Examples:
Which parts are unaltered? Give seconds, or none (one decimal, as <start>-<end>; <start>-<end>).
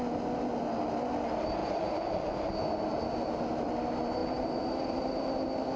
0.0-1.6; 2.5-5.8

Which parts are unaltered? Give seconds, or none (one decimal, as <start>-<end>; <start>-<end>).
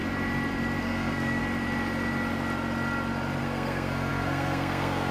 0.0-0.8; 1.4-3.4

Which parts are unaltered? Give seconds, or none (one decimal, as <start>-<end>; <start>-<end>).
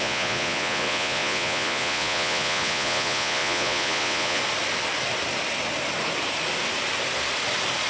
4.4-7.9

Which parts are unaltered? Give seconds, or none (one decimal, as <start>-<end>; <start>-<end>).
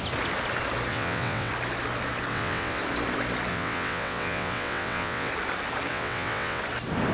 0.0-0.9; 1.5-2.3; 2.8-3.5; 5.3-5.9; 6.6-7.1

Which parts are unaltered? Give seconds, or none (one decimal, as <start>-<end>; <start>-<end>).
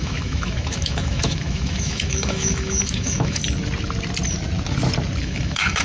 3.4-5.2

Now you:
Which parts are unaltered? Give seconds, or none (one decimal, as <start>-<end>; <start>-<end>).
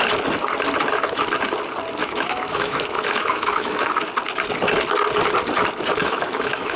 0.0-2.0; 3.9-6.0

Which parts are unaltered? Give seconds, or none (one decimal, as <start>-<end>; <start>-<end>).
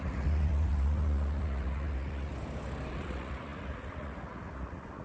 2.3-2.9